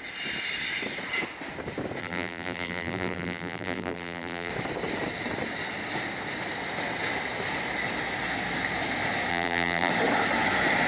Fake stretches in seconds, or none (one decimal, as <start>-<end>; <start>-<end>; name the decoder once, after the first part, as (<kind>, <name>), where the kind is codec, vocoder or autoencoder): 2.0-4.5 (vocoder, BigVGAN v2); 9.3-9.9